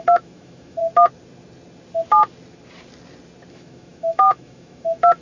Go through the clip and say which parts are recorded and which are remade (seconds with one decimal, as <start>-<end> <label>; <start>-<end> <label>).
0.0-0.8 remade; 0.8-3.5 recorded; 3.5-5.2 remade